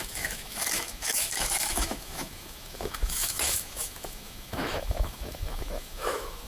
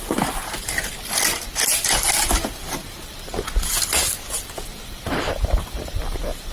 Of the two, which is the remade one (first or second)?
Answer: first